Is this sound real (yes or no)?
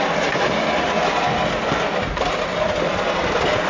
yes